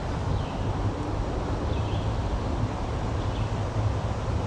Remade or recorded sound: recorded